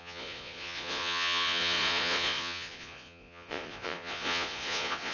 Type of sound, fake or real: fake